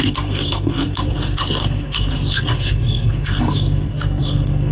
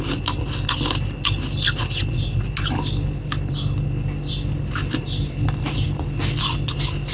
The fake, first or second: first